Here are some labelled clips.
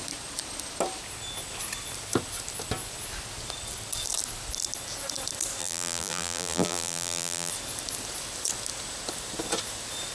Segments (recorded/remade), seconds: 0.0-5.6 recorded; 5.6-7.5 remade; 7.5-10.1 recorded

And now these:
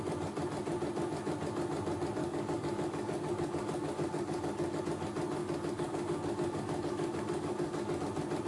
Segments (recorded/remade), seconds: 0.0-2.2 recorded; 2.2-4.8 remade; 4.8-5.4 recorded; 5.4-8.0 remade; 8.0-8.5 recorded

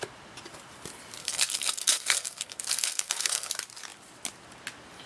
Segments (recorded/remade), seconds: 0.0-1.2 recorded; 1.2-3.5 remade; 3.5-5.1 recorded

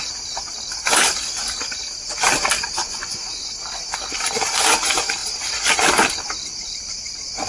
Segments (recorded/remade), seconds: 0.0-2.8 recorded; 2.8-3.5 remade; 3.5-7.5 recorded